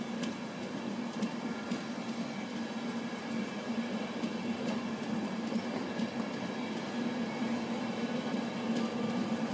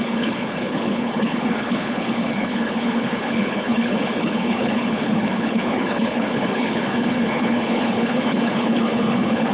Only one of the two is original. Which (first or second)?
first